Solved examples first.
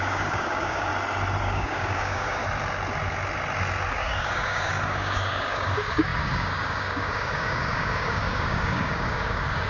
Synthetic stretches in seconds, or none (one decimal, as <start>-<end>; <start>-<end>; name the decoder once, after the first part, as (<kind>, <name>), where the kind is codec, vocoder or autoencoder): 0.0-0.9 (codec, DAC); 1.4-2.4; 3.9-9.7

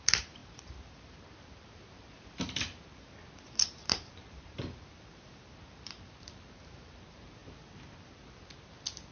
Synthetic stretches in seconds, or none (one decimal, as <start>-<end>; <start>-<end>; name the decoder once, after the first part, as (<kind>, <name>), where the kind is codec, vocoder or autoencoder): 0.0-7.4 (vocoder, BigVGAN v2)

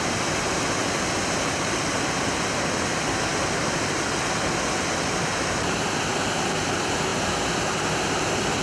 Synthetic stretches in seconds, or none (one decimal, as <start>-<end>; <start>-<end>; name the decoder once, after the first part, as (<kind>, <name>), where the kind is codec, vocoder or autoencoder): none